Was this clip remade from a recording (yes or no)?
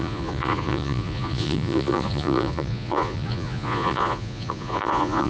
yes